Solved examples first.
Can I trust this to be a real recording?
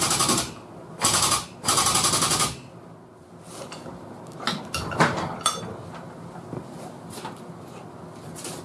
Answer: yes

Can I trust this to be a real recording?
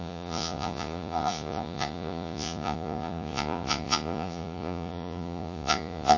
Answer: no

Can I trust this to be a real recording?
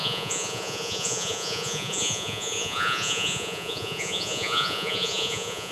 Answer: no